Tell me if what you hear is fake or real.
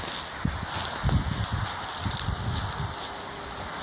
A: real